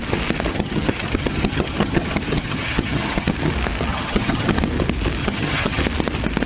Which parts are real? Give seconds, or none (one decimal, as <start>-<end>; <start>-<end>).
0.0-0.5; 3.3-3.9; 4.6-5.2; 5.8-6.5